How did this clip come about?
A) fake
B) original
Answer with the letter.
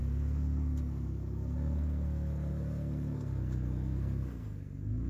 A